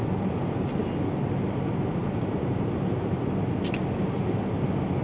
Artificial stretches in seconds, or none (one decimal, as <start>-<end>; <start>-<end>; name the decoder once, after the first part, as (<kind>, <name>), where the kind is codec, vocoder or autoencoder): 2.0-3.7 (vocoder, BigVGAN v2)